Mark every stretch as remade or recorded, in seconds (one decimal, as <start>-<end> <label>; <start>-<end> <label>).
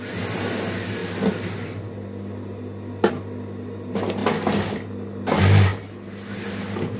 0.0-7.0 recorded